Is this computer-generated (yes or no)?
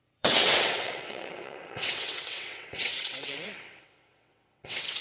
yes